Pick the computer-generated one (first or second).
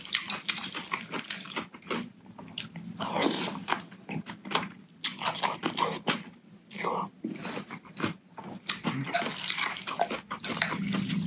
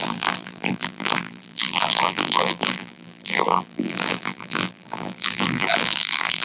second